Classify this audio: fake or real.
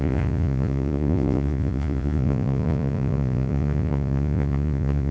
fake